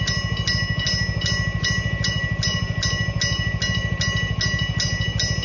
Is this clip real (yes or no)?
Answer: yes